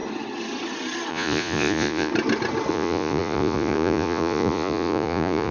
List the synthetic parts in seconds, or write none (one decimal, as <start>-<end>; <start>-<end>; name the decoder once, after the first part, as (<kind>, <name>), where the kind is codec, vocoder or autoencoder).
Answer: 1.1-2.1 (vocoder, Vocos); 2.7-5.5

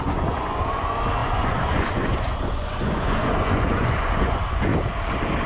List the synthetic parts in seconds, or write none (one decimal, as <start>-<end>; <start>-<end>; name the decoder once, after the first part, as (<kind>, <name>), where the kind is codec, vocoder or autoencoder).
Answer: 0.0-4.7 (vocoder, Vocos)

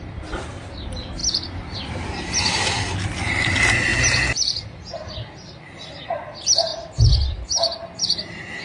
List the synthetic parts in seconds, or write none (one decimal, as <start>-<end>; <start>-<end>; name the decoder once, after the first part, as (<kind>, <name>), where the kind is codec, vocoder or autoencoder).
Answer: none

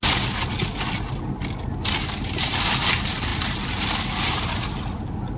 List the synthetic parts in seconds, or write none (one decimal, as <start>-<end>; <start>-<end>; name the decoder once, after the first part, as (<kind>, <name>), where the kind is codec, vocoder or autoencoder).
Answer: none

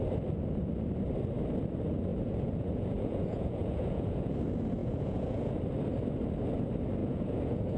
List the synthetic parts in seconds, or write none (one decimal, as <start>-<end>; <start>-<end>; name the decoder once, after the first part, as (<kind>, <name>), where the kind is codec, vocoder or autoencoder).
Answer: 2.1-4.3 (vocoder, Vocos); 4.8-5.6; 7.0-7.8

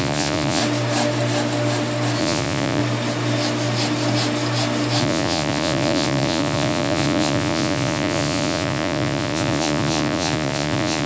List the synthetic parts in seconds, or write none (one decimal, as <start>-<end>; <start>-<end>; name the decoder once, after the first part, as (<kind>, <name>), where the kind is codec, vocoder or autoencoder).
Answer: 0.0-0.6 (vocoder, Vocos); 2.2-2.8; 5.0-11.1

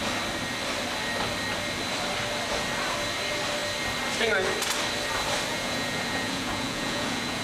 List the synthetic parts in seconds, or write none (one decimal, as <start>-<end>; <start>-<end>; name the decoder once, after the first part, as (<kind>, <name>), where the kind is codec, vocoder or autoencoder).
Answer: 5.5-7.4 (vocoder, Vocos)